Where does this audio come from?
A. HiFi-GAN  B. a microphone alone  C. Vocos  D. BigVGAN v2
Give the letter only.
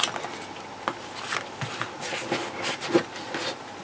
B